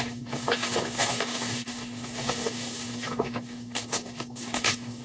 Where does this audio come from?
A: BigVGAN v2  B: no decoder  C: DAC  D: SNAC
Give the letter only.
C